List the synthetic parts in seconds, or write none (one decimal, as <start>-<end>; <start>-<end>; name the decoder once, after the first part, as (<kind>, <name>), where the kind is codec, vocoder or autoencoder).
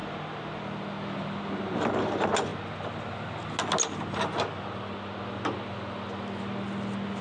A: none